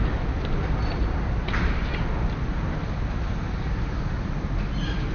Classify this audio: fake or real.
real